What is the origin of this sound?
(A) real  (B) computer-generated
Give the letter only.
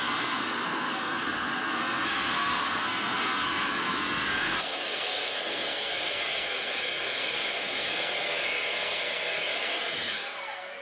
B